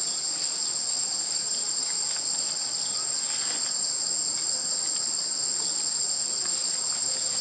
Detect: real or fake real